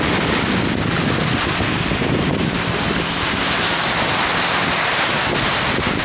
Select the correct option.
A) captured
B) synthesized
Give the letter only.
A